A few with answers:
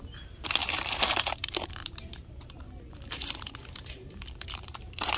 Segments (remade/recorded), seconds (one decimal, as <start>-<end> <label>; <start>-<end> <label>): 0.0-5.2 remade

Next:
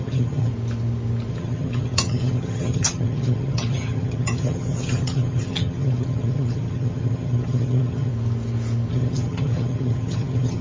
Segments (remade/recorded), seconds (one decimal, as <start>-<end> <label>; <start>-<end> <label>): 0.0-0.5 remade; 0.5-1.3 recorded; 1.3-8.1 remade; 8.1-8.9 recorded; 8.9-10.6 remade

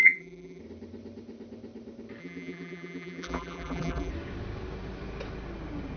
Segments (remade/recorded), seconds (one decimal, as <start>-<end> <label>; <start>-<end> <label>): 0.0-0.6 remade; 0.6-2.2 recorded; 2.2-4.1 remade; 4.1-6.0 recorded